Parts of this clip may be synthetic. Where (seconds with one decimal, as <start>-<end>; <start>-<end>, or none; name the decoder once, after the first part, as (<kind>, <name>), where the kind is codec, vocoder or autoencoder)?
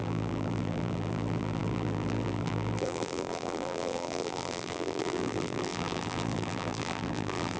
0.0-7.6 (vocoder, BigVGAN v2)